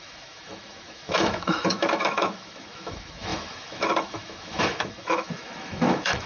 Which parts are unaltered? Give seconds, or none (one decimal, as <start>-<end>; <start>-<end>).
none